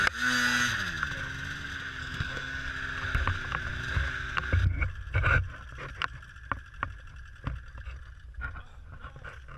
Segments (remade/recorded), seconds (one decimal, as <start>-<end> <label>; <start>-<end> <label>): 0.0-2.0 recorded; 2.0-2.7 remade; 2.7-9.6 recorded